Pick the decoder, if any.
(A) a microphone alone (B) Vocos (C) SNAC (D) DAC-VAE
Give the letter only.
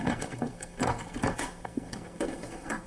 C